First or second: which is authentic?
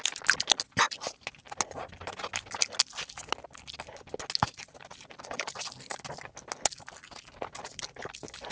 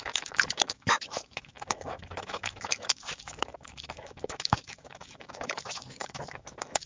first